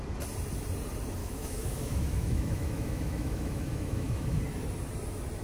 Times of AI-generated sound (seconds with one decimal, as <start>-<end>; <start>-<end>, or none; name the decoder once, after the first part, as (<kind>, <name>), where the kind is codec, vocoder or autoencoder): 1.2-4.4 (autoencoder, DAC-VAE)